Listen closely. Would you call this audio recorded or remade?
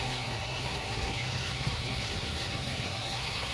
remade